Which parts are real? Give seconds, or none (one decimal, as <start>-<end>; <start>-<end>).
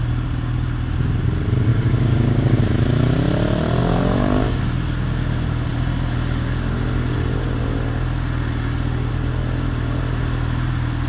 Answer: 0.0-1.7; 2.6-3.8; 4.6-11.1